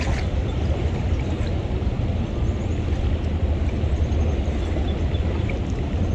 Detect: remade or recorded recorded